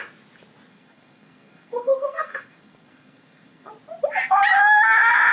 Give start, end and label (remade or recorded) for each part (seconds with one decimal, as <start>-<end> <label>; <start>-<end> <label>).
0.0-0.7 recorded; 0.7-3.7 remade; 3.7-5.3 recorded